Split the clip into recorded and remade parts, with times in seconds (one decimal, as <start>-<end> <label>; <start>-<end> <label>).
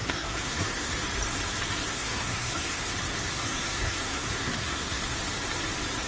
0.0-0.9 remade; 0.9-1.9 recorded; 1.9-2.9 remade; 2.9-3.3 recorded; 3.3-5.0 remade; 5.0-6.1 recorded